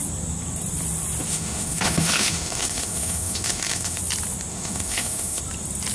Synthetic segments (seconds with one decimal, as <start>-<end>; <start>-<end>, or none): 1.3-4.0; 4.5-5.4